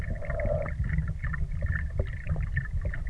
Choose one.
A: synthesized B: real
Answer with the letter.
B